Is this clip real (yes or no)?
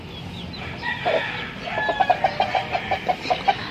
yes